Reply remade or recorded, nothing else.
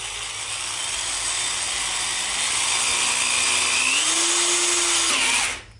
recorded